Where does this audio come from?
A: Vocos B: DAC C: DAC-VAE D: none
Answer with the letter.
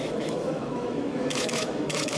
C